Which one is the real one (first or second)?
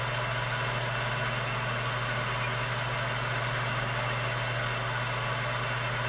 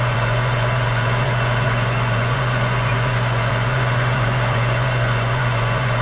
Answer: first